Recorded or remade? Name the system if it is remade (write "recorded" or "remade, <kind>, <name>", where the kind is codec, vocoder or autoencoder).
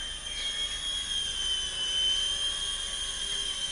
remade, vocoder, BigVGAN v2